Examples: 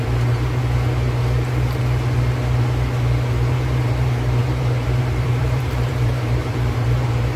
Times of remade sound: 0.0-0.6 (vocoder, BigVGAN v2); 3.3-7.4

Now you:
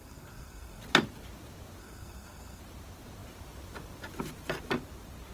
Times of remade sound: 0.0-0.8 (codec, SNAC); 1.8-2.6

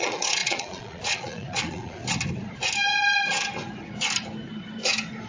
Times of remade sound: 0.0-2.0 (vocoder, Vocos)

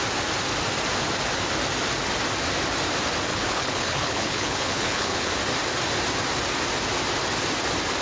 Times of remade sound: 3.3-5.3 (codec, HILCodec)

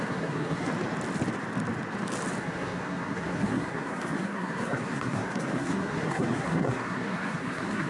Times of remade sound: 0.0-0.7 (codec, SNAC); 2.4-7.9